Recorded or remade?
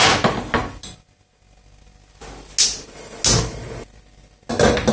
recorded